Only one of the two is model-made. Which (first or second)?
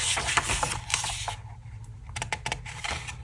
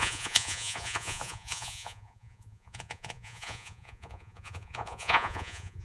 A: second